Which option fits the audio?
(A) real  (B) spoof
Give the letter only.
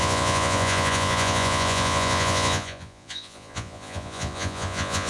B